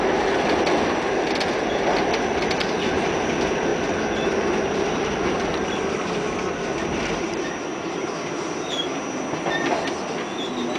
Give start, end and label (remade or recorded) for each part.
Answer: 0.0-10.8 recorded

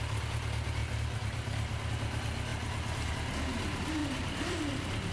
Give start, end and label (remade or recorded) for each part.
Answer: 0.0-0.8 recorded; 0.8-1.9 remade; 1.9-4.0 recorded; 4.0-5.1 remade

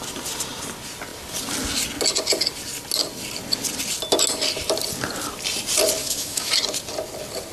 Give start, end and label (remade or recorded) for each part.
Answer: 0.0-6.0 recorded; 6.0-6.5 remade; 6.5-7.5 recorded

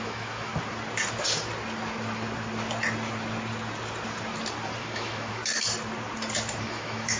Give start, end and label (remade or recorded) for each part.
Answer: 0.0-0.5 remade; 0.5-4.8 recorded; 4.8-5.4 remade; 5.4-6.6 recorded; 6.6-7.2 remade

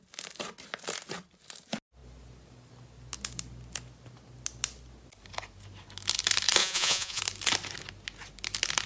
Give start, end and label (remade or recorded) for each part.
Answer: 0.0-6.6 recorded; 6.6-7.2 remade; 7.2-8.9 recorded